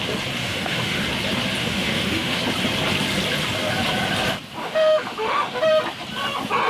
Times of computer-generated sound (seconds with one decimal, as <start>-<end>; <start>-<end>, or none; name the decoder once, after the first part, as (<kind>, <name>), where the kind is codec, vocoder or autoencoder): 0.4-1.0 (autoencoder, DAC-VAE); 1.6-2.4; 4.6-5.6